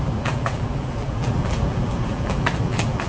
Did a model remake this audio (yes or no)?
yes